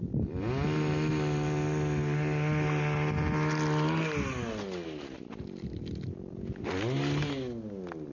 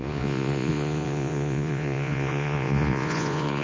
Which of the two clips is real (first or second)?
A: first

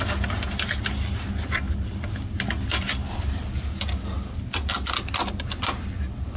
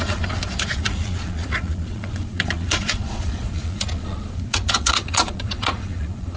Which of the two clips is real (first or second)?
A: first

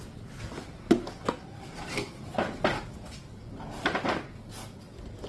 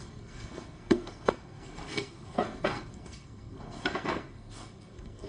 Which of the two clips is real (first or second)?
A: first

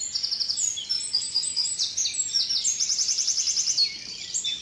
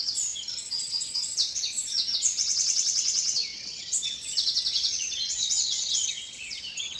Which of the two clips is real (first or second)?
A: first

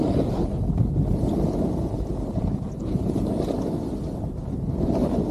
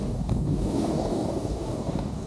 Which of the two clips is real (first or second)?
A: first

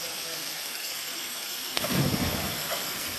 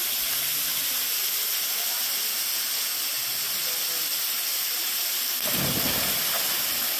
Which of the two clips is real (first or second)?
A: second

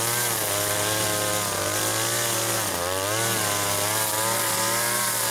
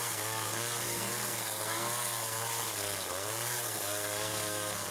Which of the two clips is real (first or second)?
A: first